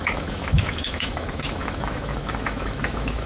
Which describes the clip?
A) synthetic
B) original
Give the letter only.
A